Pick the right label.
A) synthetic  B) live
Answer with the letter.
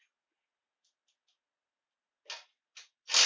B